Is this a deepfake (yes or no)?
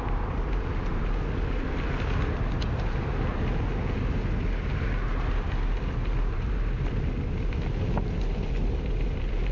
no